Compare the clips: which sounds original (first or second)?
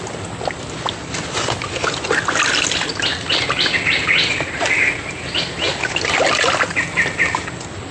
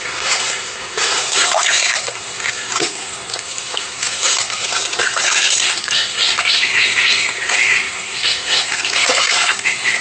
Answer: first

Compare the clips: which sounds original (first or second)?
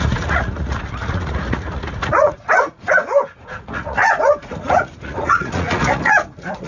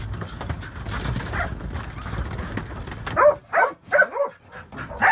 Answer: second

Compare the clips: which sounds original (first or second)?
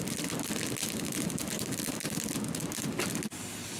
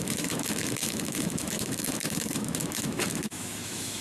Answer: first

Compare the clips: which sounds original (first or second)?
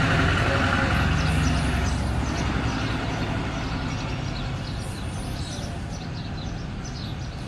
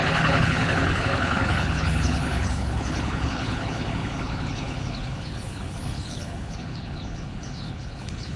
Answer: first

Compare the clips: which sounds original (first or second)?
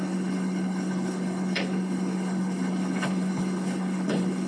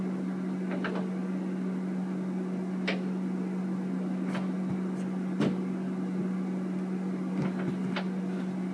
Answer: second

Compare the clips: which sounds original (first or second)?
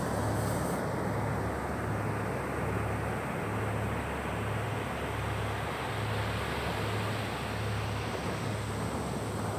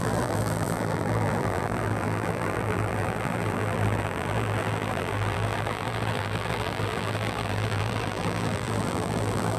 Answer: first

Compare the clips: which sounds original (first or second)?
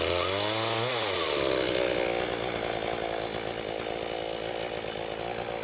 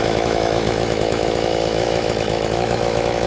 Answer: first